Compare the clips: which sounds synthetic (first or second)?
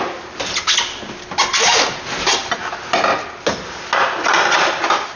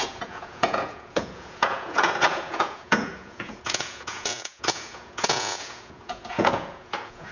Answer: second